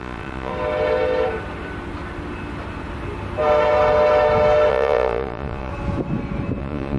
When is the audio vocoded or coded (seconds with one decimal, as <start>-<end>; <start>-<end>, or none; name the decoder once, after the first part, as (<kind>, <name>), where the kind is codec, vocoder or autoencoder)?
0.0-0.5 (vocoder, Vocos); 4.7-5.7; 6.6-7.0